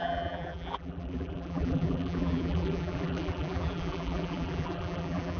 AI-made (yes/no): yes